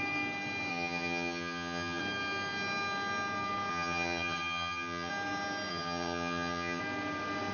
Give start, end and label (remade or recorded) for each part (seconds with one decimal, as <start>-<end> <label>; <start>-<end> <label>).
0.0-0.7 recorded; 0.7-2.0 remade; 2.0-3.7 recorded; 3.7-5.1 remade; 5.1-5.7 recorded; 5.7-6.8 remade; 6.8-7.5 recorded